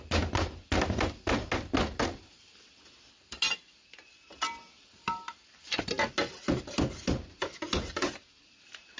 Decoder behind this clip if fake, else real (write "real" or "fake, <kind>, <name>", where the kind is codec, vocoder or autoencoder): real